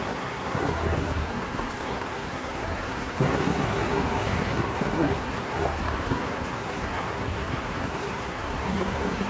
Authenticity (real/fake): fake